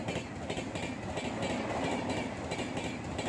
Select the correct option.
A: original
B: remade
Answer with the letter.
A